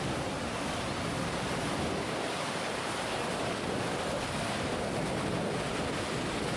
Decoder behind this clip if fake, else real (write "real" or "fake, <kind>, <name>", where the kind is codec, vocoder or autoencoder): real